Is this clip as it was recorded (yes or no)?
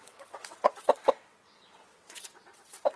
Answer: no